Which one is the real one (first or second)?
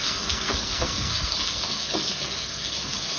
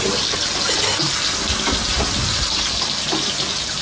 second